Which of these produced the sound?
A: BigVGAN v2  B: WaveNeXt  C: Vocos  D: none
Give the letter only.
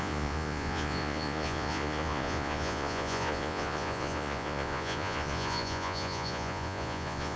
C